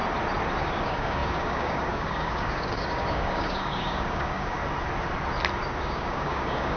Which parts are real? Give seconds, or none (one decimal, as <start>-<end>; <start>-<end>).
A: 0.0-0.6; 4.6-5.8